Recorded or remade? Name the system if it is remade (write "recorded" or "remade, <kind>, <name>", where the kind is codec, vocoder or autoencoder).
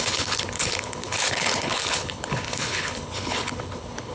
remade, codec, HILCodec